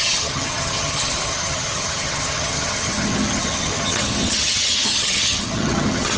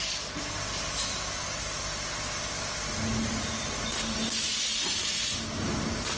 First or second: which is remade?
first